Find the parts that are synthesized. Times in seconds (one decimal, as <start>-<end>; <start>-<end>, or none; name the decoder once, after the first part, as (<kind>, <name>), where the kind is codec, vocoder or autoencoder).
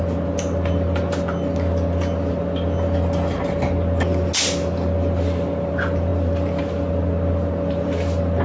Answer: none